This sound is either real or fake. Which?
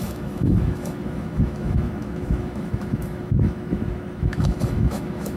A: fake